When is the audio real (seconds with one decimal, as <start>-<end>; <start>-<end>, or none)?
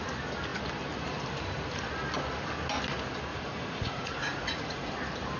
0.0-3.3; 4.9-5.4